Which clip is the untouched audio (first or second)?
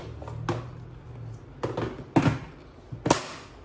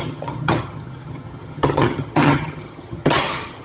first